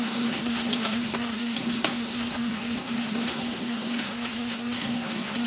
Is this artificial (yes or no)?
yes